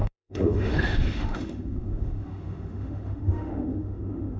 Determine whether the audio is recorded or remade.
remade